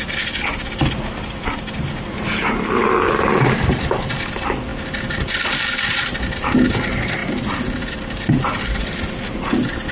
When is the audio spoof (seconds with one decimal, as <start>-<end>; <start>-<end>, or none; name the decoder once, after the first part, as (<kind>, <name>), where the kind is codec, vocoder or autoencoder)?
none